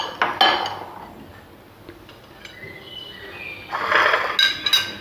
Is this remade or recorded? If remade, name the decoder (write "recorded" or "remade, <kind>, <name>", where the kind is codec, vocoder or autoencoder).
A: recorded